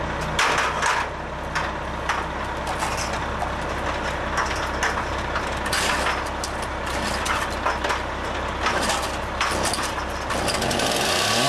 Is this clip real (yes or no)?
yes